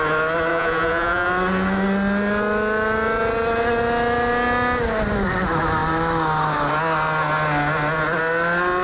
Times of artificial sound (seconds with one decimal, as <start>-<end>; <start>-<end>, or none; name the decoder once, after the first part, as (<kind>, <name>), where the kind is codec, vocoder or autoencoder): 0.5-1.3 (vocoder, Vocos)